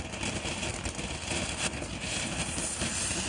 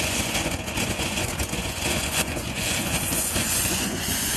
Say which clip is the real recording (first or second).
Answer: first